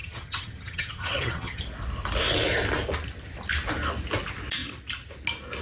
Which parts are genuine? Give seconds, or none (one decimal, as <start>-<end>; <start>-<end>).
1.6-5.6